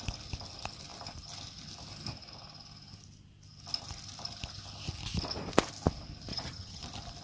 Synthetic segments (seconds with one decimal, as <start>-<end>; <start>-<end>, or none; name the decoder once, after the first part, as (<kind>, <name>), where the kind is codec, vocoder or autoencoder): 6.3-6.8 (vocoder, HiFi-GAN)